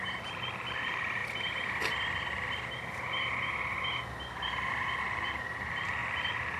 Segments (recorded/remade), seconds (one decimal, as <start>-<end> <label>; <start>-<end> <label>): 0.0-1.2 remade; 1.2-5.0 recorded; 5.0-6.6 remade